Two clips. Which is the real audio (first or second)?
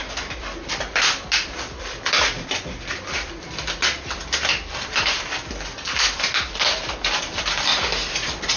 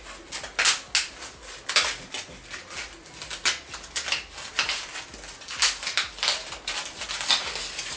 second